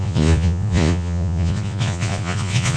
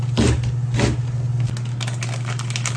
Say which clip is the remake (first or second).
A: first